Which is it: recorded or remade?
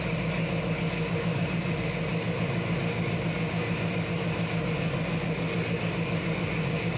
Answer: recorded